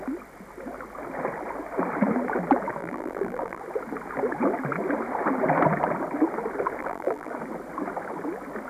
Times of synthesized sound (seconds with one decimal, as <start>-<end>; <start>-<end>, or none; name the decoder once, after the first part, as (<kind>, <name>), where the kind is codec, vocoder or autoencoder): 2.8-3.6 (vocoder, BigVGAN v2); 6.8-7.3